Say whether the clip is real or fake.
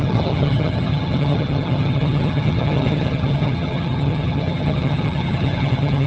fake